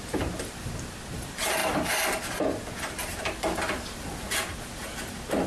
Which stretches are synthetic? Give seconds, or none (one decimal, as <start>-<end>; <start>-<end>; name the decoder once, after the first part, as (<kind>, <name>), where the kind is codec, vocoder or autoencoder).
none